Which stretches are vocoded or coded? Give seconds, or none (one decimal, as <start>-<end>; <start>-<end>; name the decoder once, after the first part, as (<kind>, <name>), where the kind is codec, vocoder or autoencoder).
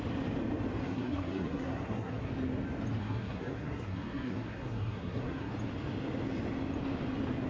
0.8-2.3 (codec, SNAC); 3.0-5.5